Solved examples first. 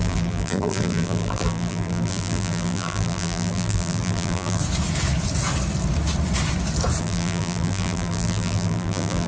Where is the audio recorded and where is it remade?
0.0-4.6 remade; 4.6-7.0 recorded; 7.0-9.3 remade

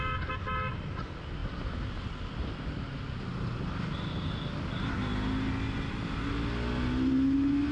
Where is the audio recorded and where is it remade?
0.0-7.7 recorded

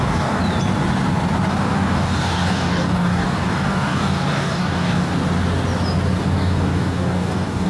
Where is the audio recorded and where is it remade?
0.0-0.4 remade; 0.4-1.5 recorded; 1.5-5.1 remade; 5.1-6.2 recorded; 6.2-7.7 remade

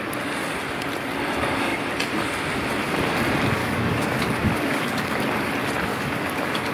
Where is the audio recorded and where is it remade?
0.0-3.6 recorded; 3.6-5.5 remade; 5.5-5.9 recorded; 5.9-6.7 remade